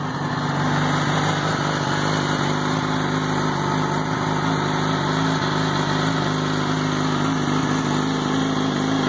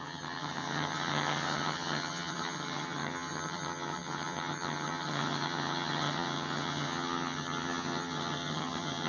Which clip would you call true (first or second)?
first